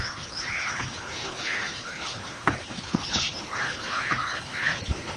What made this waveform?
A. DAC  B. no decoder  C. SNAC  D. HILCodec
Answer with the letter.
D